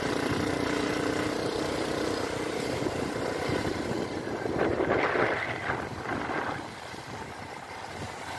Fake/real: fake